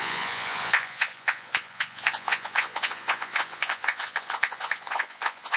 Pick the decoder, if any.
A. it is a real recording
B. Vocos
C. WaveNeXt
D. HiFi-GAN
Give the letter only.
B